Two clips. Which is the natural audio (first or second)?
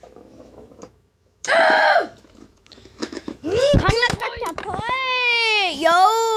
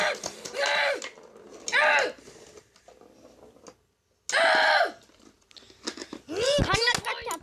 second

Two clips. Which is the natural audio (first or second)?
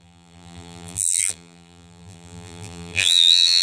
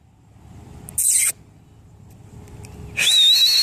second